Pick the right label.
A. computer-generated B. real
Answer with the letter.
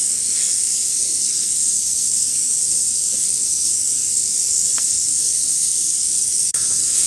A